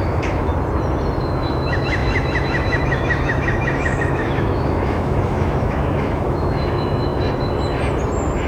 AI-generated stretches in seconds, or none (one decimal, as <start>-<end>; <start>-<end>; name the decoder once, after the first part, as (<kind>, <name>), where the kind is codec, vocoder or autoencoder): 0.0-0.5 (autoencoder, DAC-VAE); 1.2-7.1